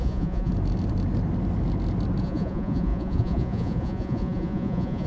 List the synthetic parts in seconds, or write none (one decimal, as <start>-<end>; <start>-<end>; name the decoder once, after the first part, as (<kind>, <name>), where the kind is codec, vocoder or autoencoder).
0.0-0.5 (vocoder, Vocos); 2.2-5.1